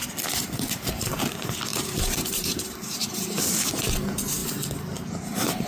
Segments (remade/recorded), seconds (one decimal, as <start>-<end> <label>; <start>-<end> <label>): 0.0-1.7 recorded; 1.7-3.7 remade; 3.7-5.7 recorded